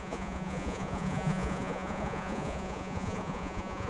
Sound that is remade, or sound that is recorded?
remade